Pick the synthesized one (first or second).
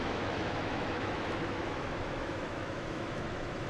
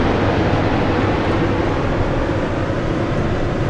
first